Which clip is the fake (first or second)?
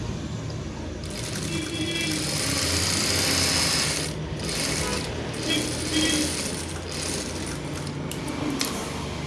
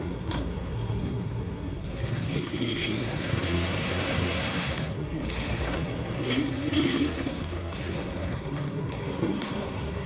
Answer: second